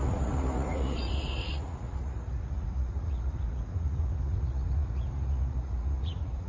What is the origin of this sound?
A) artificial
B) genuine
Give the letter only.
A